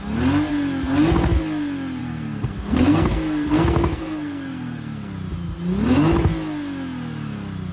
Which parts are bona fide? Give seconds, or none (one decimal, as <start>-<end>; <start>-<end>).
0.0-2.0; 5.1-7.7